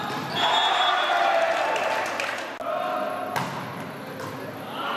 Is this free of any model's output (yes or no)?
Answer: yes